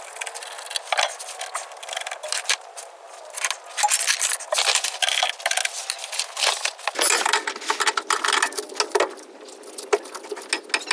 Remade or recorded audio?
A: recorded